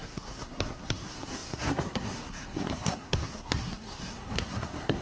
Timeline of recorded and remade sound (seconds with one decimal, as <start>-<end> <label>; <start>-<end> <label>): 0.0-5.0 remade